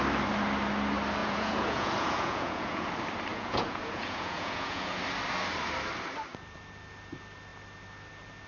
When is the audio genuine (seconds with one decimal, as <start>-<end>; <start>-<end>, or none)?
0.0-1.2; 2.9-3.3; 5.0-8.5